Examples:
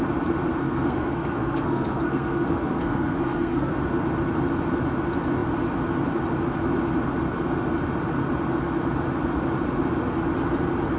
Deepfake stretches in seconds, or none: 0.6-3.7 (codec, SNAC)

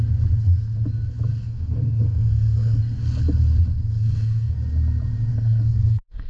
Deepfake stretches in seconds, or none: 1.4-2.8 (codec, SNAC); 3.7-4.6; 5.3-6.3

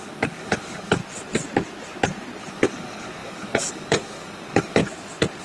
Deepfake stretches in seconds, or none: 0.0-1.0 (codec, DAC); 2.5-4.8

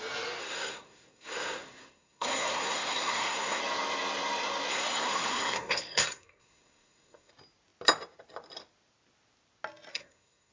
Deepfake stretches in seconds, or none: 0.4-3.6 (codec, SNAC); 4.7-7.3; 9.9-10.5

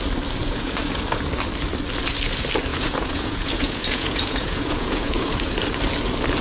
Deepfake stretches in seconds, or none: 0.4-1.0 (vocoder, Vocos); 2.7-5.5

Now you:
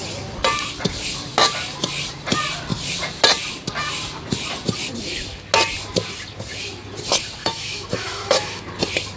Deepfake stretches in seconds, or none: 7.4-8.6 (autoencoder, DAC-VAE)